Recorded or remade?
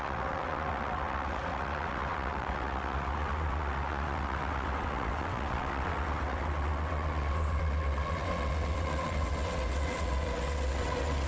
remade